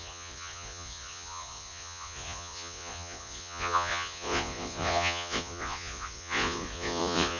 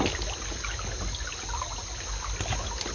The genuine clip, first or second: second